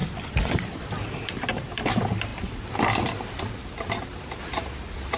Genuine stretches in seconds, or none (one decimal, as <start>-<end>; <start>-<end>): 1.8-5.2